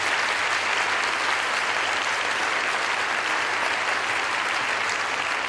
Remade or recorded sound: recorded